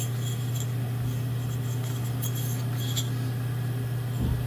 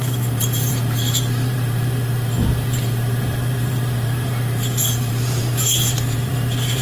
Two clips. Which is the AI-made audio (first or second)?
second